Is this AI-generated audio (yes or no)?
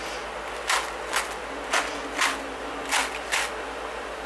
no